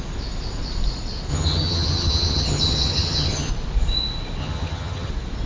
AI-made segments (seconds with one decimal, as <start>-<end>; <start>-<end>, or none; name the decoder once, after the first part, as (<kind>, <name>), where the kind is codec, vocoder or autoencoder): 1.3-3.5 (vocoder, HiFi-GAN); 4.4-5.1